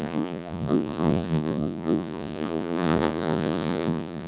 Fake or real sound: fake